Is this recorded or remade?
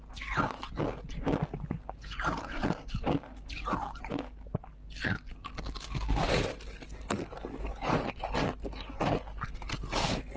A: recorded